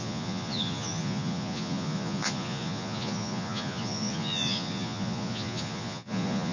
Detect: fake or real fake